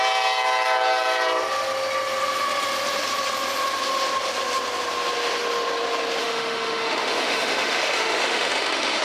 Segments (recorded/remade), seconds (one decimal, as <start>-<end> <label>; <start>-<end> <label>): 0.0-6.2 recorded; 6.2-9.0 remade